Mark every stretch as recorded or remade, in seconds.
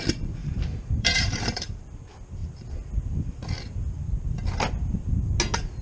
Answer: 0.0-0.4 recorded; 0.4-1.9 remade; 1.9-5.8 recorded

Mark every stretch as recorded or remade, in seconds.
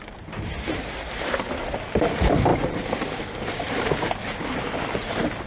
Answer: 0.0-5.5 recorded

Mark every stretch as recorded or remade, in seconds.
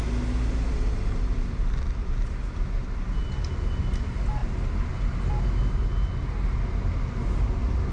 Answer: 0.0-7.9 recorded